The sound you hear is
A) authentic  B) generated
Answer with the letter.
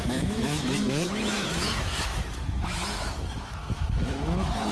B